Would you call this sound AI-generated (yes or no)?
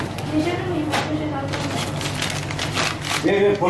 no